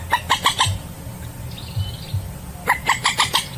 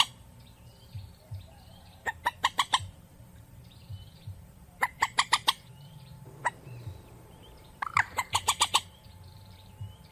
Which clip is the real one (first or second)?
first